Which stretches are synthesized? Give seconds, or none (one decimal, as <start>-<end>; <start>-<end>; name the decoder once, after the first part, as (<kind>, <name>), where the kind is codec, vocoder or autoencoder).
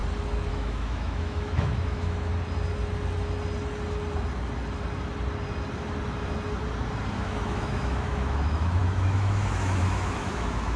0.5-2.3 (autoencoder, DAC-VAE); 7.1-10.8